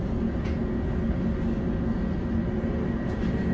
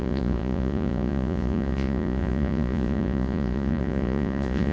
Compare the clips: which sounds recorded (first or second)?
first